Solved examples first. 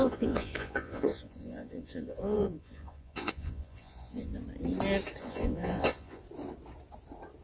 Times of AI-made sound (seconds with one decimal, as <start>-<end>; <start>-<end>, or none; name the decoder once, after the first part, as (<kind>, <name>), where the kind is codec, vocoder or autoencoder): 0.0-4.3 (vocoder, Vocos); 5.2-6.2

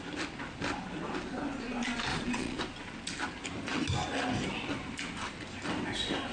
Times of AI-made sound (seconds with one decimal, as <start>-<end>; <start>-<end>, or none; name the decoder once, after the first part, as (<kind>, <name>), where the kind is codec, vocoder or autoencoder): 2.1-2.6 (vocoder, Vocos)

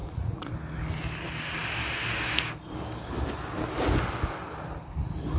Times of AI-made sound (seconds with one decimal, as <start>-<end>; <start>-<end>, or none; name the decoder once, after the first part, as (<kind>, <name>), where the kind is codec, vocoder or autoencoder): 0.0-0.5 (vocoder, Vocos)

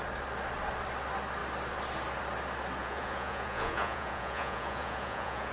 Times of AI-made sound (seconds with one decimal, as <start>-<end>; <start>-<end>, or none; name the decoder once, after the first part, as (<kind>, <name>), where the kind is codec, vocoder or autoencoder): 2.8-5.5 (vocoder, Vocos)

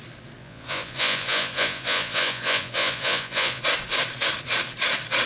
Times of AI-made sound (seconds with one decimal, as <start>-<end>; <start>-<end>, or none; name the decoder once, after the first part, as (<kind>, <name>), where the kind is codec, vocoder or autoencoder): 0.4-3.6 (vocoder, Vocos)

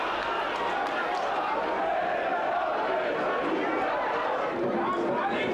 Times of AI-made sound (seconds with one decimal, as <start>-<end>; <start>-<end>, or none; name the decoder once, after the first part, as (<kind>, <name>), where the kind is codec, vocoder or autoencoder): none